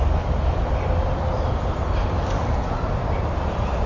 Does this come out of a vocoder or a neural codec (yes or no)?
no